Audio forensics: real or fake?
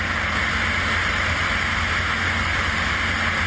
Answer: real